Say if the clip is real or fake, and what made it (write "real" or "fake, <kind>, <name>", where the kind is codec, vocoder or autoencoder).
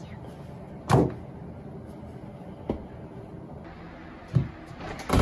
real